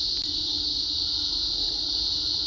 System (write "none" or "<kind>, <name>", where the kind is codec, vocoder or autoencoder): none